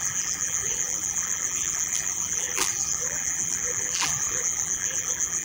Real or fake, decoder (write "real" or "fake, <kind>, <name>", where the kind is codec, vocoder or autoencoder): fake, vocoder, BigVGAN v2